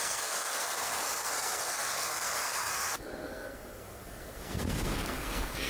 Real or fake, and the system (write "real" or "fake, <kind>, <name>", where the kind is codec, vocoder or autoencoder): fake, codec, SNAC